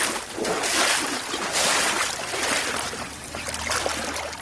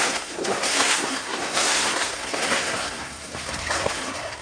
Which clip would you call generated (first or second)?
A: second